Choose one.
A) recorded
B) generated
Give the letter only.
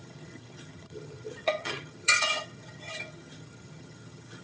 B